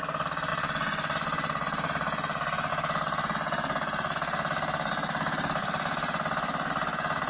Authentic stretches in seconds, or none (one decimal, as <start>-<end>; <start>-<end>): 0.0-5.6; 6.7-7.3